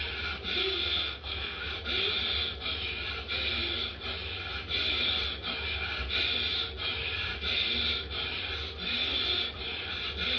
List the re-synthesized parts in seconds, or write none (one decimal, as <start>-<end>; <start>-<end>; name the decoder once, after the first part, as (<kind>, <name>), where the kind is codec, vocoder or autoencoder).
0.6-1.7 (codec, SNAC)